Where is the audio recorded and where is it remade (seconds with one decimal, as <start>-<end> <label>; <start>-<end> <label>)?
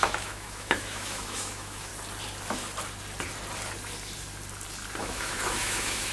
0.0-1.9 remade; 1.9-5.0 recorded; 5.0-6.1 remade